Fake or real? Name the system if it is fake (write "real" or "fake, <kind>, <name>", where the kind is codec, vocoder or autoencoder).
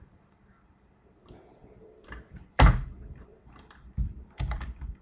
fake, vocoder, BigVGAN v2